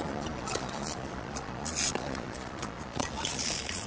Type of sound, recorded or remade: remade